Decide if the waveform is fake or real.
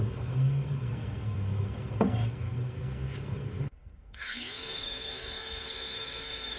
fake